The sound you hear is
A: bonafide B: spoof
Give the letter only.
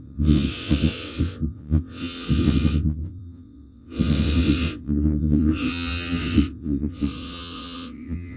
B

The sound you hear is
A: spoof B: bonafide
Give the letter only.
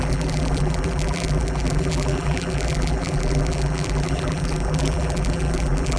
A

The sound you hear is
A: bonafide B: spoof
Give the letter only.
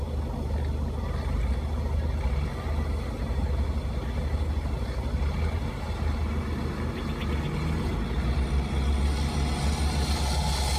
A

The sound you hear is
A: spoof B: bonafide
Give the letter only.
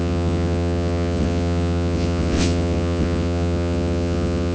A